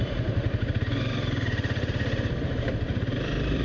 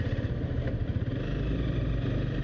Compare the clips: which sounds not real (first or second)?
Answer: first